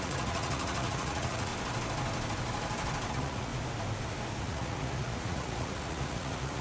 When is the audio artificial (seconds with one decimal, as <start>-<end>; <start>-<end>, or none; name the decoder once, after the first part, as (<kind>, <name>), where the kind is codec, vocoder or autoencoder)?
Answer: 0.0-1.5 (vocoder, Vocos); 3.1-3.5; 4.4-6.6